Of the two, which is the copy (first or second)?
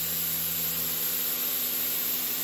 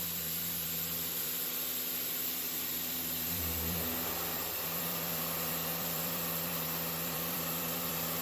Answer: second